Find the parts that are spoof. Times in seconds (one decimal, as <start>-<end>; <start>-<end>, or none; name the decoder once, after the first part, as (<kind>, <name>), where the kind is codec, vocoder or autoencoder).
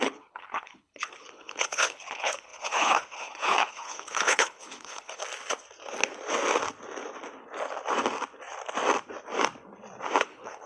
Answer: 0.0-5.2 (codec, HILCodec); 10.2-10.7